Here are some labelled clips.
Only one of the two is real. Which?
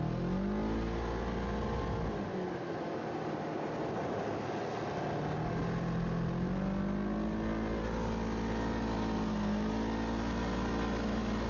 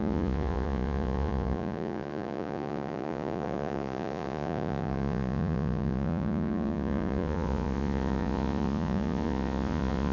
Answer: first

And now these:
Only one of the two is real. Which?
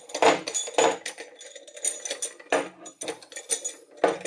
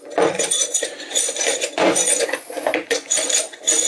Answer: first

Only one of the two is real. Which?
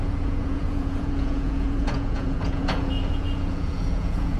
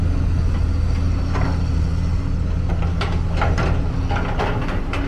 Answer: second